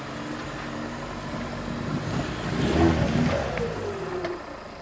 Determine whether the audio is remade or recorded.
recorded